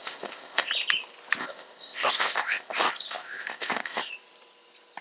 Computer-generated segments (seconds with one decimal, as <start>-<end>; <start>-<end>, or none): 0.0-0.7; 1.4-4.1